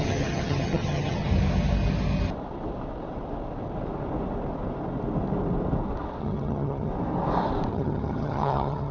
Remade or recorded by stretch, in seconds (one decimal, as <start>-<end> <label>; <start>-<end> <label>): 0.0-1.3 remade; 1.3-6.2 recorded; 6.2-6.9 remade; 6.9-7.7 recorded; 7.7-8.9 remade